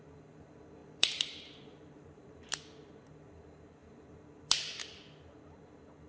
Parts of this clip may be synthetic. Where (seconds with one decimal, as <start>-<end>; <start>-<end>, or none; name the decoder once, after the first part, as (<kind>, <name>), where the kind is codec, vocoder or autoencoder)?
0.8-2.5 (vocoder, BigVGAN v2)